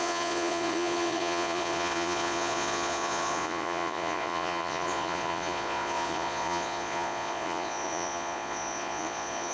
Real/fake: fake